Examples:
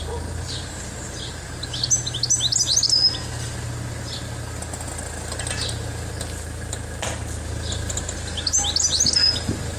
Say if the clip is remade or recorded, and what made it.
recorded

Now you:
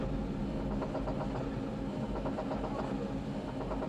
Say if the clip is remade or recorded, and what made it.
recorded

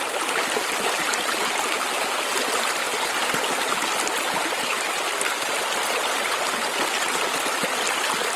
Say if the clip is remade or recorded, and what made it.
recorded